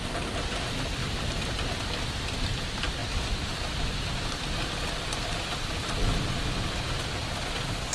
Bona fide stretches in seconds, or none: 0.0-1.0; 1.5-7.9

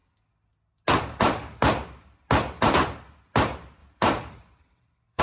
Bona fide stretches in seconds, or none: 0.0-3.8

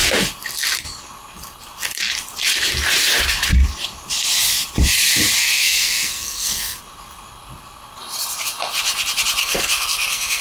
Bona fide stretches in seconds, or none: 0.0-5.4; 6.8-9.4

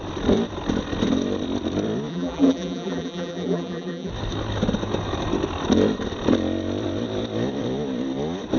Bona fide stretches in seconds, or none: 0.0-2.1; 4.1-8.6

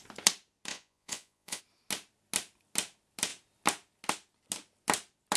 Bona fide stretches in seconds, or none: 0.0-0.7; 1.6-5.4